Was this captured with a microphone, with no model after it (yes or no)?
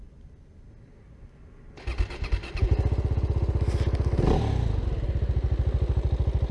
yes